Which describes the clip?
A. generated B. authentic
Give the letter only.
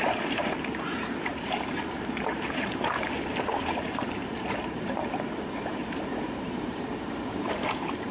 A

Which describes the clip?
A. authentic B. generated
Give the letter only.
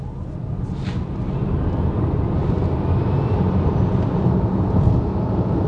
A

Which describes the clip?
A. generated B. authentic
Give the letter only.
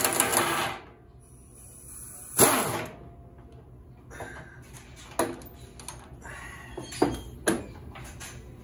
B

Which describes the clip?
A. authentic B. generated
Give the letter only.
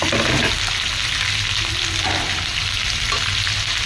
A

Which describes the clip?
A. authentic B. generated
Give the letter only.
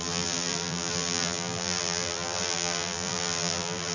B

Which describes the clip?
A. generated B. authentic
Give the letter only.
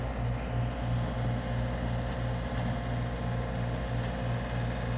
B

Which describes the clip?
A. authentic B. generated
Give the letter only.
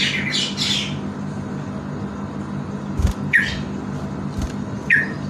A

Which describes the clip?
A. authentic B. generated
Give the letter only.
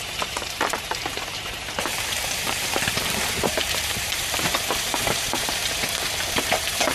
B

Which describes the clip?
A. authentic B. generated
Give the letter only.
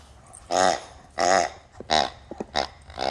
A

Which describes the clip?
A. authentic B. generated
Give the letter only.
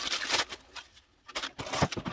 A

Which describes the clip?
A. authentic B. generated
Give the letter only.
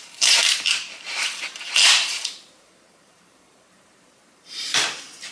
B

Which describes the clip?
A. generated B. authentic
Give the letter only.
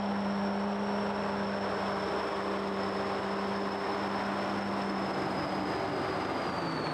B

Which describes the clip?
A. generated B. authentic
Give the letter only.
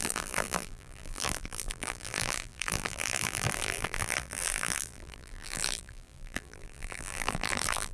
A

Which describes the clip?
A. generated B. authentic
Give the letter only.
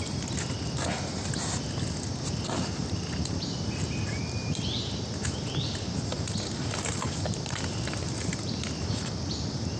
B